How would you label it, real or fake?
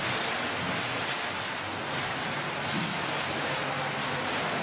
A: real